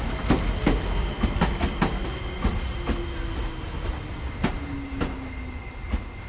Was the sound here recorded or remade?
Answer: recorded